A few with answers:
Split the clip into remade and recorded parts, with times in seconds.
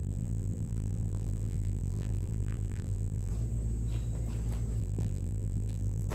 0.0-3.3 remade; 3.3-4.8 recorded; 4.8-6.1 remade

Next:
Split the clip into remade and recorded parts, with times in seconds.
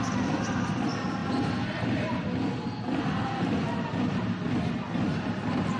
0.0-5.8 recorded